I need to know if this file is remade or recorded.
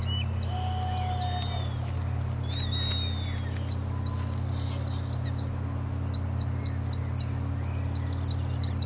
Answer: recorded